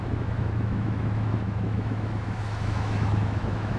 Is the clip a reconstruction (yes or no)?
yes